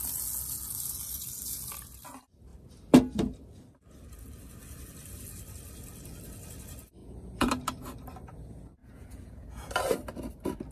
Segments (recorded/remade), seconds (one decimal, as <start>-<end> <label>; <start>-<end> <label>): 0.0-7.0 recorded; 7.0-7.5 remade; 7.5-8.8 recorded; 8.8-9.7 remade; 9.7-10.7 recorded